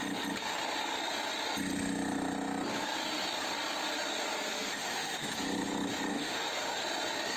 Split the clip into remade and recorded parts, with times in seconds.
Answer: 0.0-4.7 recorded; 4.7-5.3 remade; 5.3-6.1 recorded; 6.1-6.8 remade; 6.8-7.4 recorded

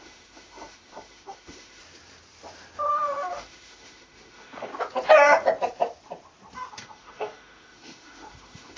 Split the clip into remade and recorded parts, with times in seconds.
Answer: 0.0-1.8 remade; 1.8-2.9 recorded; 2.9-4.7 remade; 4.7-6.7 recorded; 6.7-8.8 remade